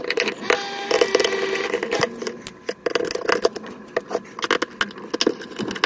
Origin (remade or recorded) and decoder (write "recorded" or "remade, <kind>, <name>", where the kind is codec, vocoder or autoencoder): recorded